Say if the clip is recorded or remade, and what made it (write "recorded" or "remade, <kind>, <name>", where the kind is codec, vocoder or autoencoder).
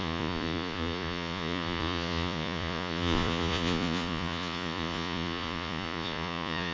remade, vocoder, Vocos